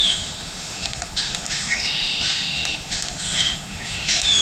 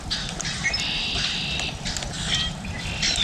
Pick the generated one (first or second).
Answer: first